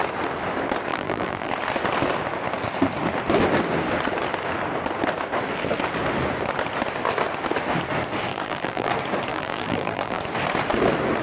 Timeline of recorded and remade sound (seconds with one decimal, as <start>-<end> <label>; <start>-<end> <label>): 0.0-0.9 recorded; 0.9-1.5 remade; 1.5-8.3 recorded; 8.3-8.9 remade; 8.9-9.3 recorded; 9.3-10.2 remade; 10.2-11.2 recorded